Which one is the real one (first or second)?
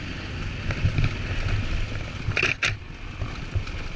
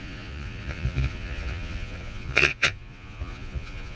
first